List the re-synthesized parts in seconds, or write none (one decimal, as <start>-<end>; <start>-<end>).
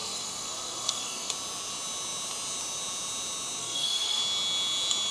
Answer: 0.0-1.3; 3.6-4.2